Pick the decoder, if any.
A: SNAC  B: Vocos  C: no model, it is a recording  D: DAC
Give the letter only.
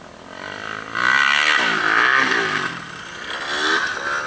C